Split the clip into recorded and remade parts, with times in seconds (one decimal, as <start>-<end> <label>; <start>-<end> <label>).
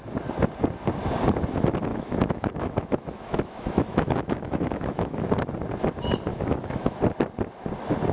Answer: 0.0-1.9 recorded; 1.9-5.3 remade; 5.3-6.3 recorded; 6.3-7.0 remade; 7.0-8.1 recorded